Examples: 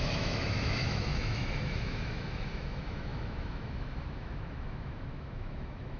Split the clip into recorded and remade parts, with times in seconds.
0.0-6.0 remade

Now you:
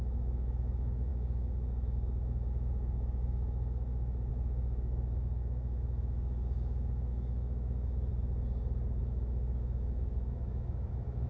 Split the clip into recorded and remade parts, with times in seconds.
0.0-8.1 remade; 8.1-9.0 recorded; 9.0-11.3 remade

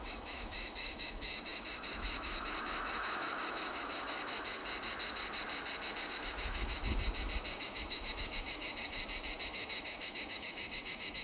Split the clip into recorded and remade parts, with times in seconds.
0.0-4.6 remade; 4.6-6.1 recorded; 6.1-6.8 remade; 6.8-7.5 recorded; 7.5-9.0 remade; 9.0-9.5 recorded; 9.5-11.2 remade

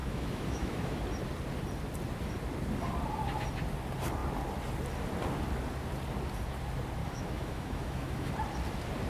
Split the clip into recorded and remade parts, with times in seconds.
0.0-1.0 remade; 1.0-7.0 recorded; 7.0-8.3 remade; 8.3-9.1 recorded